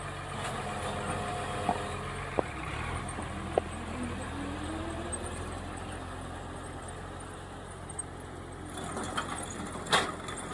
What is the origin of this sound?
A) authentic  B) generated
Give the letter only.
A